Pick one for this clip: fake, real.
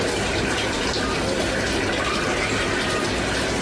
real